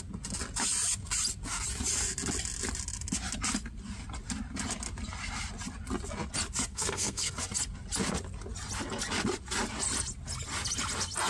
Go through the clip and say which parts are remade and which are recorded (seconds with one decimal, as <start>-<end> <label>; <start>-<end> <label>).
0.0-6.7 recorded; 6.7-7.3 remade; 7.3-11.3 recorded